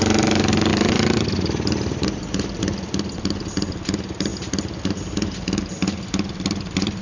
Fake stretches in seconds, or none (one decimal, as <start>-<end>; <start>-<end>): none